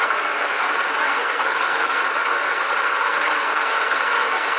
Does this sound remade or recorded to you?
remade